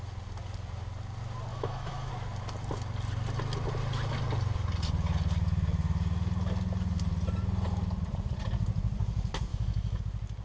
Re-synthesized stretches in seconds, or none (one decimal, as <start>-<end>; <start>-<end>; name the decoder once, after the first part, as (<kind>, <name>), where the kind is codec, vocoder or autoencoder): 1.5-2.1 (autoencoder, DAC-VAE); 9.5-10.0